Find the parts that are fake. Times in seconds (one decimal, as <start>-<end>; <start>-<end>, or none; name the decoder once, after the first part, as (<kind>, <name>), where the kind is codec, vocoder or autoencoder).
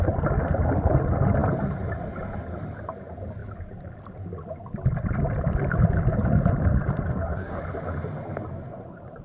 7.1-7.6 (codec, SNAC)